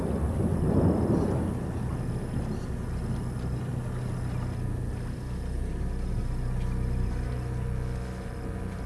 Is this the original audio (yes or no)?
yes